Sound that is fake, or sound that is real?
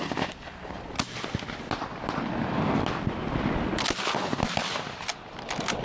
real